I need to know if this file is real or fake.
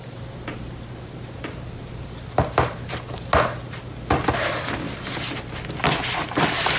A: real